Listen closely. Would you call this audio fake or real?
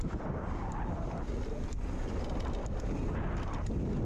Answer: real